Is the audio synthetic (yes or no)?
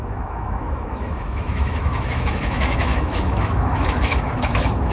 yes